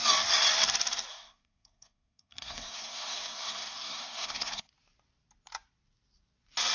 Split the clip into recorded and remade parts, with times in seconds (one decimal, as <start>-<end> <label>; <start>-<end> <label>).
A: 0.0-1.1 recorded; 1.1-4.7 remade; 4.7-6.7 recorded

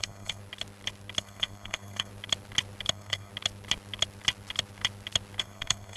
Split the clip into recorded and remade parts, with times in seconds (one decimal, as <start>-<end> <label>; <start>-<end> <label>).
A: 0.0-0.4 remade; 0.4-1.2 recorded; 1.2-2.1 remade; 2.1-2.9 recorded; 2.9-3.3 remade; 3.3-5.4 recorded; 5.4-6.0 remade